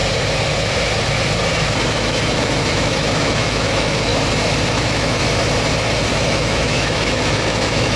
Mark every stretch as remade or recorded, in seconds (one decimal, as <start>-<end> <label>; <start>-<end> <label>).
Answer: 0.0-1.9 recorded; 1.9-4.1 remade; 4.1-4.7 recorded; 4.7-5.2 remade; 5.2-6.1 recorded; 6.1-8.0 remade